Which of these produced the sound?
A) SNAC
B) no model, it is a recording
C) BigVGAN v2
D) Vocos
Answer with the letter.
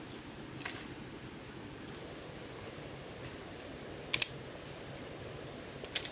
B